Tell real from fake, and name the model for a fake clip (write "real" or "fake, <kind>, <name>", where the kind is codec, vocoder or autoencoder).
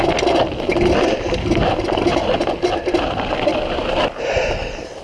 real